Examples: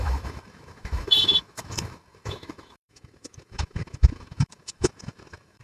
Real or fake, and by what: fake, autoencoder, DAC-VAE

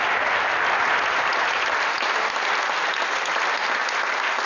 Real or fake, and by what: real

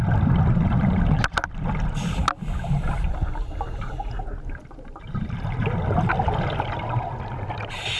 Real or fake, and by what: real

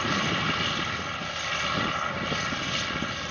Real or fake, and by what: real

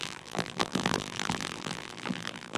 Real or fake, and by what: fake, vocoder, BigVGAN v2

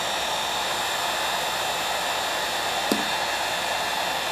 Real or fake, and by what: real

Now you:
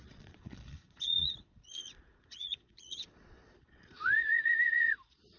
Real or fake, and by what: fake, vocoder, Vocos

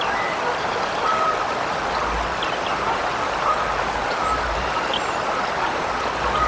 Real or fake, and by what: fake, vocoder, BigVGAN v2